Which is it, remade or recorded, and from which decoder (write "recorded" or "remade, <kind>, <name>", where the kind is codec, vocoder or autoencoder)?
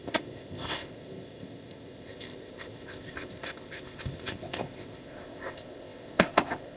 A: remade, codec, ZipCodec